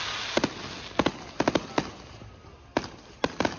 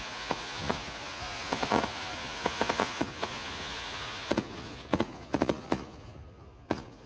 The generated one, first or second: second